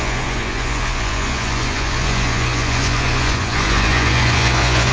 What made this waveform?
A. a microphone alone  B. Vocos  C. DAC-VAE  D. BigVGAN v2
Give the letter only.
B